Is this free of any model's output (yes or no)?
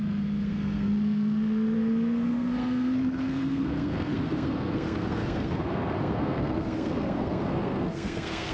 no